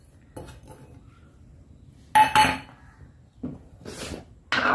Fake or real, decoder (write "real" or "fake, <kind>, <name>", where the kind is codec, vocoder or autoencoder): real